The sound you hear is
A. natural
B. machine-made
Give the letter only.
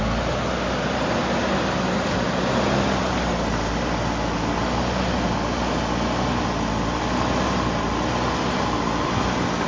A